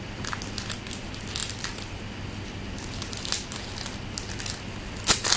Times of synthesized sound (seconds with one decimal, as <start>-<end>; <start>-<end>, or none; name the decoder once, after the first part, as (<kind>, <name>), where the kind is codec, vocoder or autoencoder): none